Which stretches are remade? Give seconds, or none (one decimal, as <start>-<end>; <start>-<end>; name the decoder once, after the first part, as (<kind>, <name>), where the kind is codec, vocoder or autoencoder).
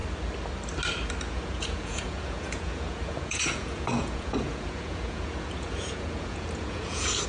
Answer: 1.3-7.3 (vocoder, Vocos)